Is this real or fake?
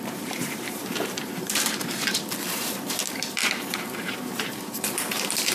fake